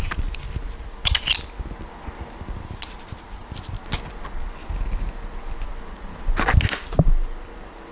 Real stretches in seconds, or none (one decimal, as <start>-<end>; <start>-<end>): 0.0-7.9